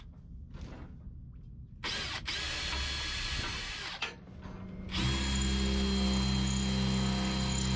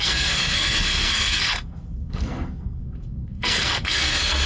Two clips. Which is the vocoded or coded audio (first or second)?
second